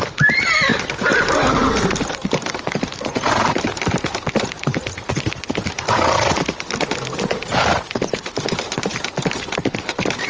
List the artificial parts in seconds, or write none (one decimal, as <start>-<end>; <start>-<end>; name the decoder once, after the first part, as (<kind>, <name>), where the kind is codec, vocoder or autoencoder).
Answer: 0.0-10.3 (vocoder, BigVGAN v2)